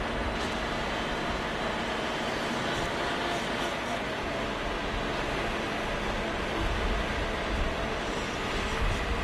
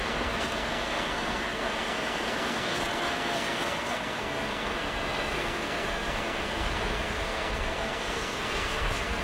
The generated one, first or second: second